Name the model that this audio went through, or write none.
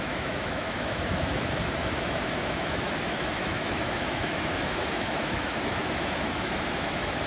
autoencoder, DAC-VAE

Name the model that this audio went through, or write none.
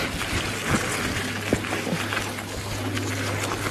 none